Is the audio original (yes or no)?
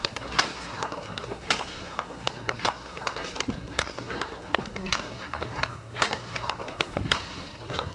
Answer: no